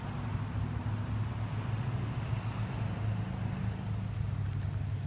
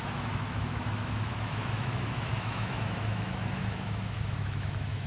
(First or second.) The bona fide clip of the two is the first